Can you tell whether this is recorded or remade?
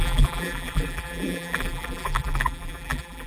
remade